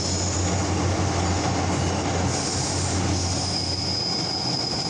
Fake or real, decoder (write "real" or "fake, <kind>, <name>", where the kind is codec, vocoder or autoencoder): real